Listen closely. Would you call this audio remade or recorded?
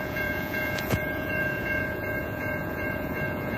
remade